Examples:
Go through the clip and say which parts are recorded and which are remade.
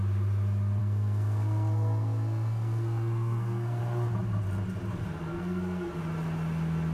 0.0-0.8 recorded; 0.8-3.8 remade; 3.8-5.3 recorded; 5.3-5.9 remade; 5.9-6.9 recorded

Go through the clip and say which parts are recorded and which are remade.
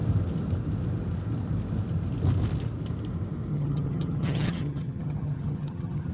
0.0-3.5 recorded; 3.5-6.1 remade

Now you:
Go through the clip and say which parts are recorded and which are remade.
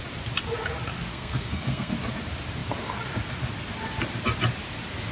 0.0-1.1 recorded; 1.1-1.9 remade; 1.9-5.1 recorded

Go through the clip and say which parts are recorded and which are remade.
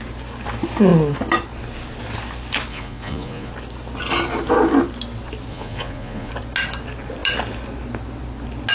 0.0-2.7 recorded; 2.7-3.5 remade; 3.5-5.5 recorded; 5.5-6.3 remade; 6.3-8.7 recorded